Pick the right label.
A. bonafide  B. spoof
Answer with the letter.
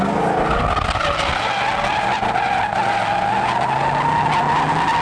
A